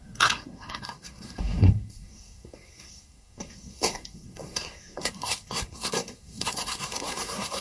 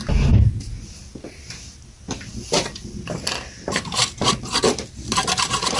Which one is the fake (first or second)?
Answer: first